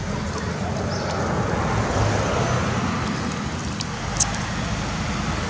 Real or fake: real